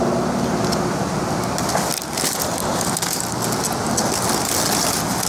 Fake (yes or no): no